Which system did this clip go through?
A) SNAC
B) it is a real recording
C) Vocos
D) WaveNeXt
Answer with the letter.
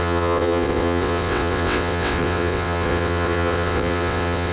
D